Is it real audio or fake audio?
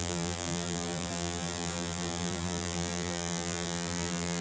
fake